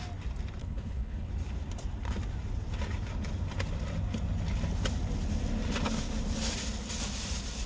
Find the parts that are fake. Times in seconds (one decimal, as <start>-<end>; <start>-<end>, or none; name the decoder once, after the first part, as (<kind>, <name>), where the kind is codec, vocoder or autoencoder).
0.6-1.3 (codec, HILCodec)

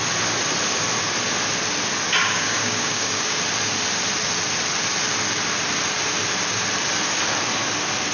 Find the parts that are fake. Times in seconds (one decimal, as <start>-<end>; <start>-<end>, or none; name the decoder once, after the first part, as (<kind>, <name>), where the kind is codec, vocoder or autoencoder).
2.2-3.4 (codec, DAC)

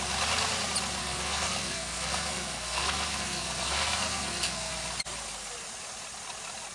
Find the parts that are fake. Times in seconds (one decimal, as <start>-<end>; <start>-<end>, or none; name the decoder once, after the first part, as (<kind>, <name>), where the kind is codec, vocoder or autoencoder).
1.0-4.7 (codec, SNAC)

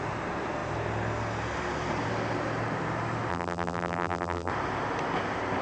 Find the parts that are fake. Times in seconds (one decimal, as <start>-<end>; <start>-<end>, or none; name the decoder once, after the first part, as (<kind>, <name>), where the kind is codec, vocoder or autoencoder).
3.3-4.5 (vocoder, BigVGAN v2)

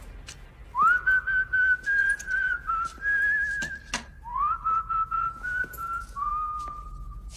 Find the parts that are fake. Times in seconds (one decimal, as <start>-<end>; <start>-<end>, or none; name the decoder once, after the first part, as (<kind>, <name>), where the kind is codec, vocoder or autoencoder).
2.0-2.7 (vocoder, Vocos); 4.3-6.3

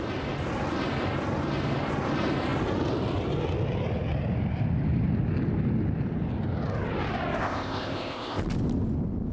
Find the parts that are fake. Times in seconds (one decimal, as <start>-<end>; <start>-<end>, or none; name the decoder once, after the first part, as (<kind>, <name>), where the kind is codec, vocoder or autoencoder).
7.4-8.4 (codec, ZipCodec)

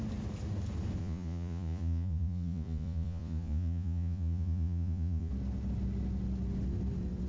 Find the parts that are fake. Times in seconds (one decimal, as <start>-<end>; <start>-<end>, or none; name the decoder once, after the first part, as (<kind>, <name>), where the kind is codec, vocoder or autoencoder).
1.0-5.3 (vocoder, Vocos)

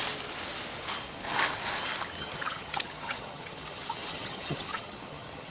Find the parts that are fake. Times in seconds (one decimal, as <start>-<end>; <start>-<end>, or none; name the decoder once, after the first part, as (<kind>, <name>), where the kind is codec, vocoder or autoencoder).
2.2-5.5 (vocoder, HiFi-GAN)